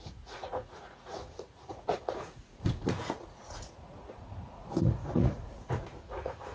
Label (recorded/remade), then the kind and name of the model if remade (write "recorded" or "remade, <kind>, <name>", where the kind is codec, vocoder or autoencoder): remade, vocoder, Vocos